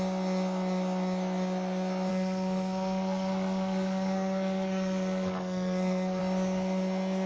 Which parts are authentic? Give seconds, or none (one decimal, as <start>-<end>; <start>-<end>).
0.0-2.1; 6.2-7.3